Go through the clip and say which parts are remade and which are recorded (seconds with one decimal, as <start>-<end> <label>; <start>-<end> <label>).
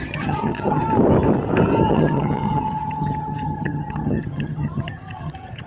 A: 0.0-0.8 remade; 0.8-1.9 recorded; 1.9-5.7 remade